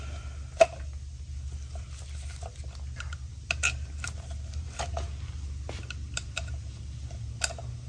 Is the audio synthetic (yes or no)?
no